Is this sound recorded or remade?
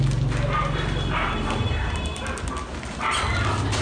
recorded